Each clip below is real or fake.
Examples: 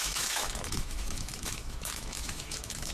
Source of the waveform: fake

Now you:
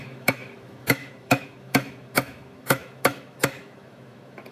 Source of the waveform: fake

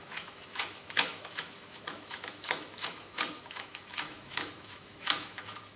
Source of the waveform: fake